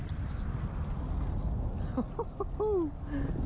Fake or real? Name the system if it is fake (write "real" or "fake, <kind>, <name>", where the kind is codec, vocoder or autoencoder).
real